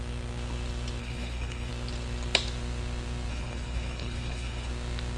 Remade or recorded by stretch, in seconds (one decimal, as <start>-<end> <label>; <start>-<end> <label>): 0.0-1.0 recorded; 1.0-1.7 remade; 1.7-3.3 recorded; 3.3-4.7 remade; 4.7-5.2 recorded